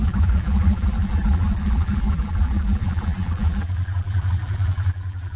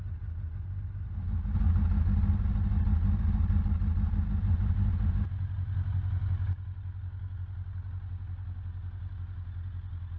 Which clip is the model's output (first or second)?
first